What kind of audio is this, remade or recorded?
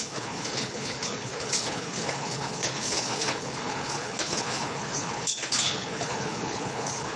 remade